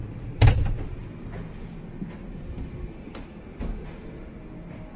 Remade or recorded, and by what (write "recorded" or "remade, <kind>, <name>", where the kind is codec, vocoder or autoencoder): recorded